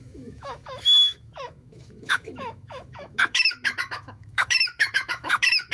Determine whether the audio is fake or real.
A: fake